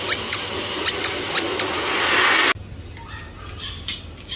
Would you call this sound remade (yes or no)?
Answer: no